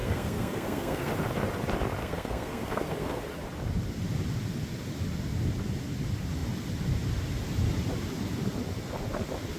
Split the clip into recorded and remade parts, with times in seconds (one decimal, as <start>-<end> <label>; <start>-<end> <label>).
0.0-1.1 remade; 1.1-2.0 recorded; 2.0-3.2 remade; 3.2-9.6 recorded